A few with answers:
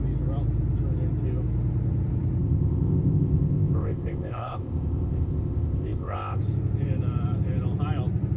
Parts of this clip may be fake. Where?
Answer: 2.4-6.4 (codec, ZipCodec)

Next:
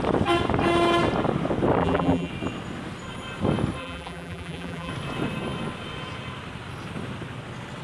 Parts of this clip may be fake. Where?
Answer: 1.8-2.3 (vocoder, BigVGAN v2); 3.8-4.9

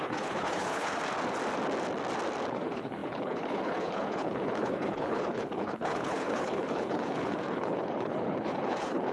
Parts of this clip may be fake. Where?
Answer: 0.0-1.0 (codec, HILCodec); 2.5-9.1

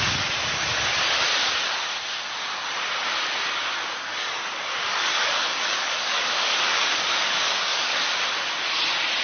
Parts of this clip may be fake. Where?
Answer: 4.2-8.2 (codec, DAC)

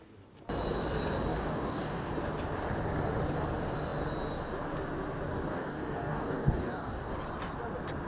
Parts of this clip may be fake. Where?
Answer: 1.3-2.1 (codec, DAC); 5.5-7.1

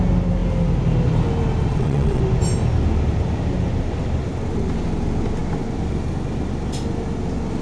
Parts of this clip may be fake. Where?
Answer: 1.7-2.2 (vocoder, WaveNeXt)

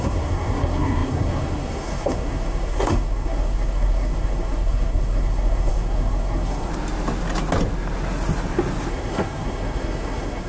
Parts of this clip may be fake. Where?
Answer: 0.0-6.7 (codec, SNAC); 8.9-10.5

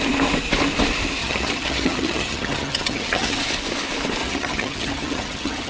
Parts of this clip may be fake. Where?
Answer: 1.2-3.5 (vocoder, HiFi-GAN); 4.2-5.7